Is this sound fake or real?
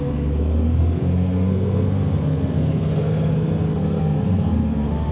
fake